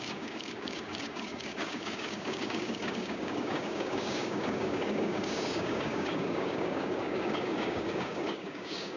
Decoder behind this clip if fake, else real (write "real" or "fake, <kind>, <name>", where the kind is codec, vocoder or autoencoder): fake, codec, DAC